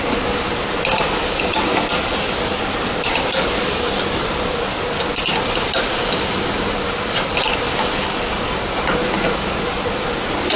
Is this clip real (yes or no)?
yes